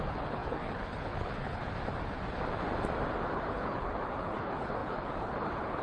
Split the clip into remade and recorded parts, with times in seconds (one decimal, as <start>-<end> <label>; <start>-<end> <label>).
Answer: 0.0-1.6 remade; 1.6-3.5 recorded; 3.5-5.8 remade